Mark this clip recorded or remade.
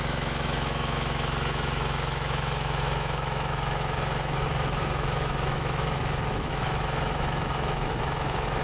remade